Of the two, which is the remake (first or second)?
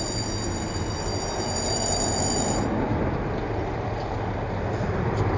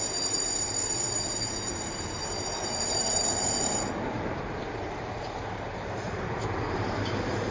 second